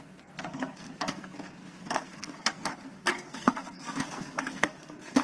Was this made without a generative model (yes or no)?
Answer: no